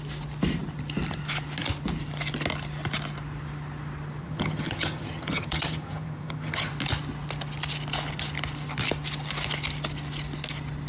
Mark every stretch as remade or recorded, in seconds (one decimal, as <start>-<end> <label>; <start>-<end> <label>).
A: 0.0-4.2 recorded; 4.2-6.7 remade; 6.7-10.9 recorded